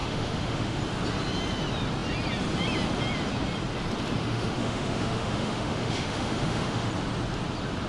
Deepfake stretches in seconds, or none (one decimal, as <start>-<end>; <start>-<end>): 0.0-0.8; 4.2-6.9